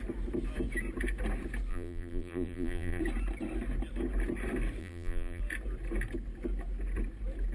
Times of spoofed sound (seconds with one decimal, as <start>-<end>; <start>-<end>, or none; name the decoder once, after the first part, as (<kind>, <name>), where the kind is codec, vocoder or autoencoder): 1.7-3.0 (vocoder, BigVGAN v2); 4.8-5.4